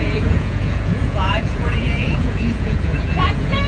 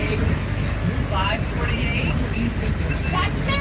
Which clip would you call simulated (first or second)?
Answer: first